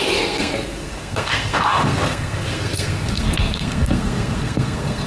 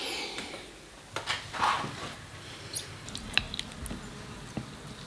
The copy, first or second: first